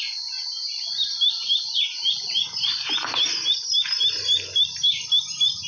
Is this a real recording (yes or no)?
yes